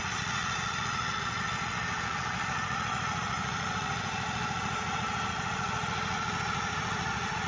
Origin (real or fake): fake